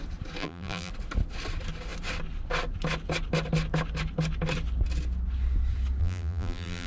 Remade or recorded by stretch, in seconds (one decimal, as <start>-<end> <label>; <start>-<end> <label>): 0.0-0.4 recorded; 0.4-0.9 remade; 0.9-6.0 recorded; 6.0-6.9 remade